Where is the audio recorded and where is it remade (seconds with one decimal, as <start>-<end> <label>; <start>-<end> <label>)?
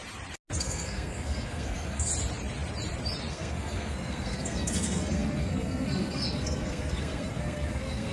0.0-0.6 recorded; 0.6-2.1 remade; 2.1-3.3 recorded; 3.3-8.1 remade